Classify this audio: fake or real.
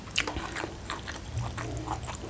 real